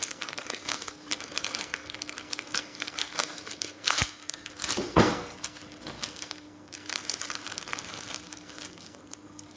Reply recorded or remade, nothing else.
remade